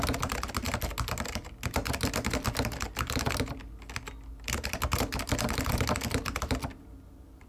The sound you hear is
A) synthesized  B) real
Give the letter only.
B